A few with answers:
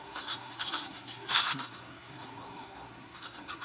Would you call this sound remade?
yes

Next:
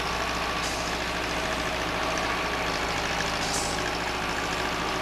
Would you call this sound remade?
no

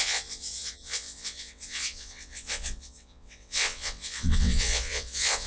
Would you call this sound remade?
yes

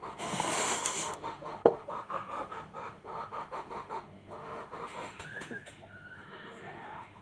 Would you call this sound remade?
yes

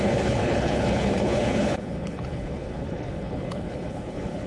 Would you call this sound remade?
yes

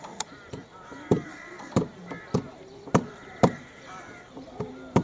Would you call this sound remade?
no